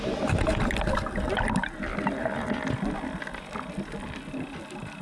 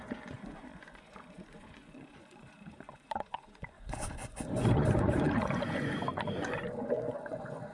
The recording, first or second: first